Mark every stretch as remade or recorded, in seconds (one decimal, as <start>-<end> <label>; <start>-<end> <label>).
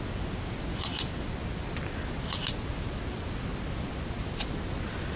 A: 0.0-5.2 recorded